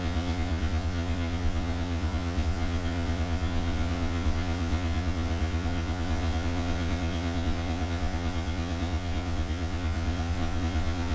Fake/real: fake